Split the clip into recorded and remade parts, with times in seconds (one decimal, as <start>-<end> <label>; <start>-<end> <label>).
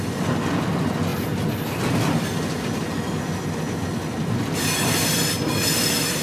0.0-6.2 recorded